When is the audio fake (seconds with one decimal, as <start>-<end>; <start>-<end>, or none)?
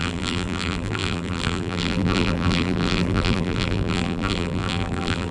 0.0-5.3